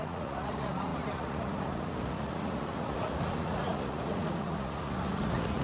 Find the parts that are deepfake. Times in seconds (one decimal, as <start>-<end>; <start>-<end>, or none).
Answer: 0.0-5.6

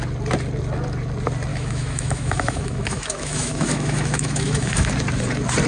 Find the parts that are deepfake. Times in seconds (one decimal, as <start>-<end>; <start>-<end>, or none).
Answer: 1.5-4.9

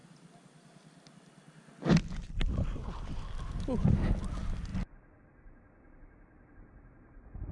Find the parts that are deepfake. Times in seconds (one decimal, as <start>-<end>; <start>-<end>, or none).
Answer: none

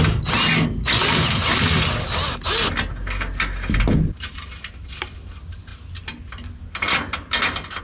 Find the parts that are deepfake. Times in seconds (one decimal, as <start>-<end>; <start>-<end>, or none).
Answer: none

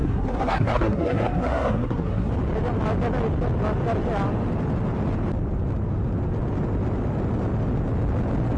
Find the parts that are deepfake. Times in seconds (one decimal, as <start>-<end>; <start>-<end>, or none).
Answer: 0.0-2.3

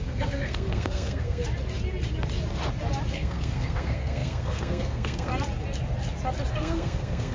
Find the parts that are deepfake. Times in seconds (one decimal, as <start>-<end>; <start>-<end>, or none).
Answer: 0.0-1.4; 3.1-5.3; 6.5-7.3

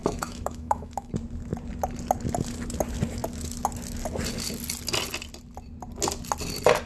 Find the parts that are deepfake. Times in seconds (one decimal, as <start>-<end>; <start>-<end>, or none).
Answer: 0.0-1.1